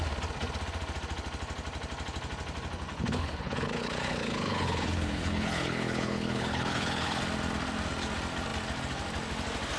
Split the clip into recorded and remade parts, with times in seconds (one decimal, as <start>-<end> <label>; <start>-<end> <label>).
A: 0.0-2.9 recorded; 2.9-7.2 remade; 7.2-9.8 recorded